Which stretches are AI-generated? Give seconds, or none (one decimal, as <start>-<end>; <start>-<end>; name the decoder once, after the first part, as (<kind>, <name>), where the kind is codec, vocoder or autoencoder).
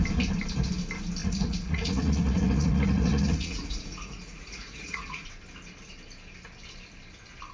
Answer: 1.2-5.3 (vocoder, Vocos)